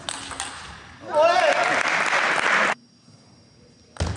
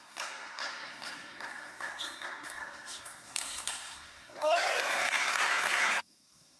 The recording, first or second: first